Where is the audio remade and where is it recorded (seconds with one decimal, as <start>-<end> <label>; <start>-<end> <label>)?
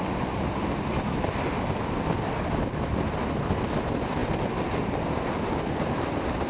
0.0-6.5 recorded